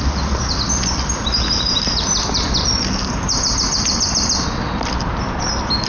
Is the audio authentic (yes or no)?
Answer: yes